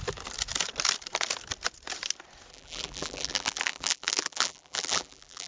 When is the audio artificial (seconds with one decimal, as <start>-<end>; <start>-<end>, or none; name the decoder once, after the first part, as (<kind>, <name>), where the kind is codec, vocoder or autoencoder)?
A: 2.5-5.5 (vocoder, BigVGAN v2)